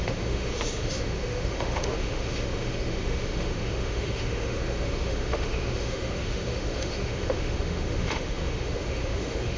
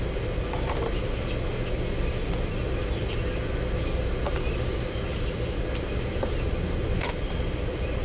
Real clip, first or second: second